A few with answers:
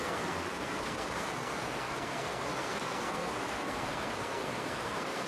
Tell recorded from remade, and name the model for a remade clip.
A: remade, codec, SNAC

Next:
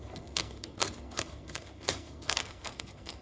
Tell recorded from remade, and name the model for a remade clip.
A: remade, codec, SNAC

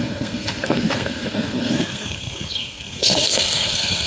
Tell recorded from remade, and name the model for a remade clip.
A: remade, codec, SNAC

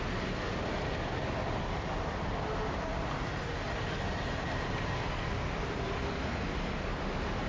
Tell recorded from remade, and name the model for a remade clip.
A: recorded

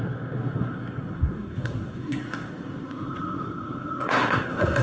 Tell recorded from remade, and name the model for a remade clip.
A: remade, codec, SNAC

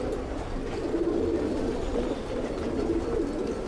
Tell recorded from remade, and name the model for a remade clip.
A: recorded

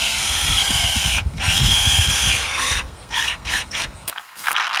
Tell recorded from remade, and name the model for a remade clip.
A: remade, codec, SNAC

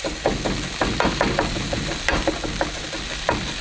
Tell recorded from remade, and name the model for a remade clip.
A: recorded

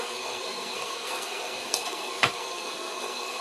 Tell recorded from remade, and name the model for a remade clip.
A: remade, codec, SNAC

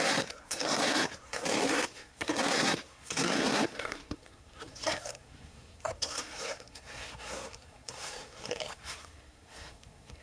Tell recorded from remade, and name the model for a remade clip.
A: remade, codec, SNAC